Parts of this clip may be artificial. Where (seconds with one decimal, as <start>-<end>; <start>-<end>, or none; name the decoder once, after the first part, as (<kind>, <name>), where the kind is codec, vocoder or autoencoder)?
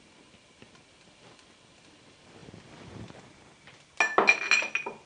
none